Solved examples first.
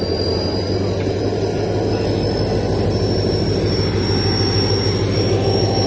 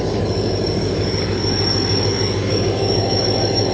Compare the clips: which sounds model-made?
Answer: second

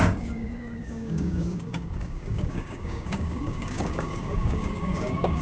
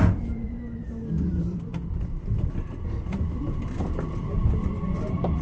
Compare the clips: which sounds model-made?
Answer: first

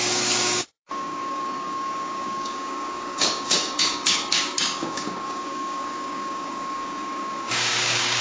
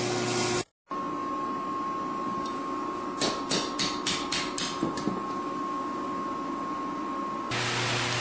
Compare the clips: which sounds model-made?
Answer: first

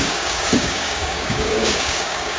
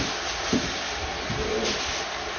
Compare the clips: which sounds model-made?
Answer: first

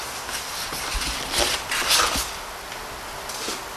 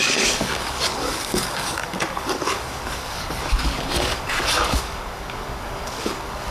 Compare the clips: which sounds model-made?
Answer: second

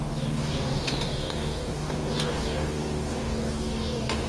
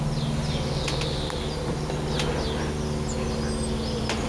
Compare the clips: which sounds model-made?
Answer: first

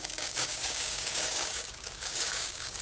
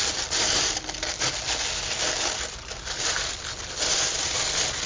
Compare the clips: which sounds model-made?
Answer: first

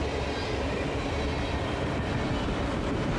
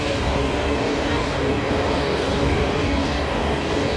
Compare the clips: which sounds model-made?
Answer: second